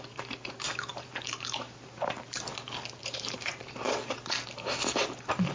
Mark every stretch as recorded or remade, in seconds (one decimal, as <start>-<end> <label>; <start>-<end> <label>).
0.0-2.5 remade; 2.5-3.0 recorded; 3.0-5.5 remade